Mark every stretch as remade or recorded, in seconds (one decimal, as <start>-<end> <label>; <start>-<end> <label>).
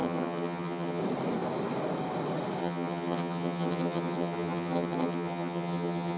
0.0-1.0 remade; 1.0-2.6 recorded; 2.6-6.2 remade